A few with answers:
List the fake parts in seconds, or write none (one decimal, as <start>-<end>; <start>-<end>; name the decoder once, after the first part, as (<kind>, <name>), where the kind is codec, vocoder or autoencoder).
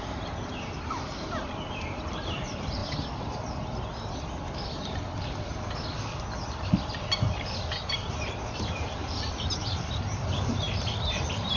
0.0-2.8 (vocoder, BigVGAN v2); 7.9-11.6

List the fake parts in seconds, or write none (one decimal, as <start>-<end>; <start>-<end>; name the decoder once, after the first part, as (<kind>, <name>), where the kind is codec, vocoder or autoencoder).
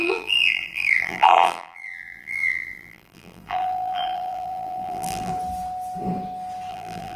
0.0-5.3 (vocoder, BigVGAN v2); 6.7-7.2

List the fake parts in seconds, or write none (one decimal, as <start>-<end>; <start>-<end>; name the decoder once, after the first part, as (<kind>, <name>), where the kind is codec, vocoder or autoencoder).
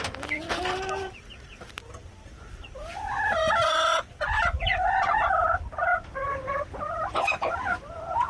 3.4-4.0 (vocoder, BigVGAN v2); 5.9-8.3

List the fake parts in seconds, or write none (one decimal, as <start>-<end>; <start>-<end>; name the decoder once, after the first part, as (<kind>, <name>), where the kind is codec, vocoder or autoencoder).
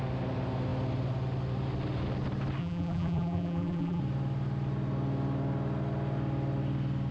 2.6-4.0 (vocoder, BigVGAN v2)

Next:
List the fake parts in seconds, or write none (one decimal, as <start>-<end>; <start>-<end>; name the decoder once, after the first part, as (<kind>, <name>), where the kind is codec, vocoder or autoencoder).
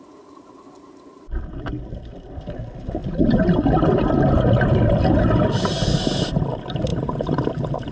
6.9-7.9 (vocoder, BigVGAN v2)